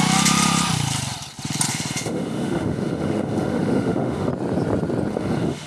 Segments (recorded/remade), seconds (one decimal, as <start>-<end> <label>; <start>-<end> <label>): 0.0-1.7 recorded; 1.7-4.3 remade; 4.3-5.1 recorded; 5.1-5.7 remade